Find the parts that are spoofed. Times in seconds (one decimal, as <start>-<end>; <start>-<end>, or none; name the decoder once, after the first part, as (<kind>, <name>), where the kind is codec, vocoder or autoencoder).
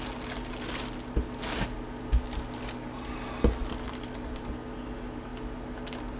none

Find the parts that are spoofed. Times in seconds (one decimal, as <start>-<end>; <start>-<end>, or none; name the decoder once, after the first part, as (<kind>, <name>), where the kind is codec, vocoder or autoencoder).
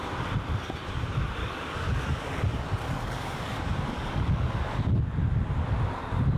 1.4-5.0 (codec, DAC)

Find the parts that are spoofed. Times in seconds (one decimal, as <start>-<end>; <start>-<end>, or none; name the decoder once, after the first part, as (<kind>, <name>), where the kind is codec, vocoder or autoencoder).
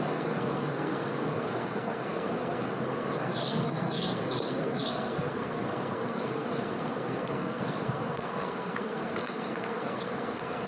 0.0-10.7 (codec, SNAC)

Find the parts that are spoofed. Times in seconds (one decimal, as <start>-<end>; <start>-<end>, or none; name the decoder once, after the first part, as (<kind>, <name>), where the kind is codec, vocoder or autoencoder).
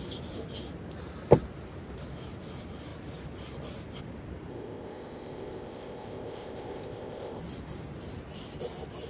4.5-7.4 (codec, ZipCodec)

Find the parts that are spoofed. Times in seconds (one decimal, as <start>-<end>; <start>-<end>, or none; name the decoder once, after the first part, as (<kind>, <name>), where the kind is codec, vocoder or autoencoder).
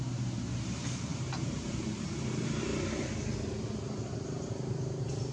0.0-2.7 (vocoder, BigVGAN v2); 4.1-5.3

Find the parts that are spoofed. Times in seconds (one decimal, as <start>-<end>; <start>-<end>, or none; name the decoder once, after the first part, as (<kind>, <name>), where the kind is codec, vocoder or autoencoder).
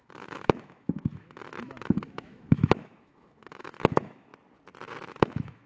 0.0-4.3 (autoencoder, DAC-VAE); 5.1-5.7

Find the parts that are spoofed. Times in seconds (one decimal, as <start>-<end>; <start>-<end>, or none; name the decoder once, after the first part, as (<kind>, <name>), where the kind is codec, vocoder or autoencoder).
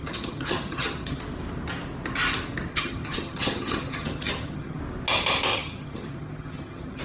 0.0-1.2 (vocoder, HiFi-GAN); 2.7-4.8; 5.5-7.0